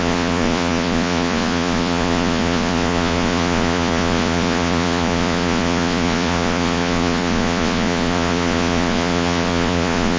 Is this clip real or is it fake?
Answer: fake